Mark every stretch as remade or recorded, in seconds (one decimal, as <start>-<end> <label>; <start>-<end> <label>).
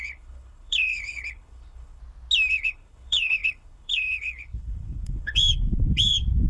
0.0-2.0 remade; 2.0-2.5 recorded; 2.5-6.5 remade